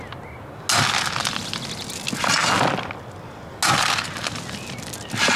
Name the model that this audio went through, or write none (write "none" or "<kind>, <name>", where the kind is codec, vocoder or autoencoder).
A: none